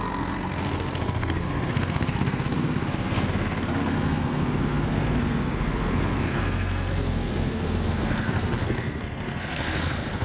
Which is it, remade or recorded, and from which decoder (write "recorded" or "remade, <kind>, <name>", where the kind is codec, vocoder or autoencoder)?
remade, codec, SNAC